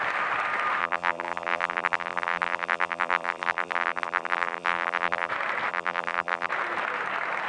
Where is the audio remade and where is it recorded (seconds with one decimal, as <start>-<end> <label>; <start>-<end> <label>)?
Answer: 0.0-0.8 recorded; 0.8-5.3 remade; 5.3-5.7 recorded; 5.7-6.5 remade; 6.5-7.5 recorded